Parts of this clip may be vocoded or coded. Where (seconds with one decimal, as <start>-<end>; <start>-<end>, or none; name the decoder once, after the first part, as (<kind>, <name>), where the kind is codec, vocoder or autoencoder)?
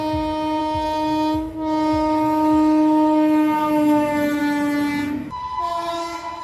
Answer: 0.6-4.4 (autoencoder, DAC-VAE); 5.2-6.4